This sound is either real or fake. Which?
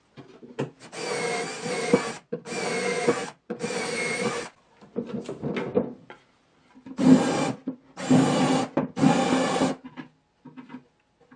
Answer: real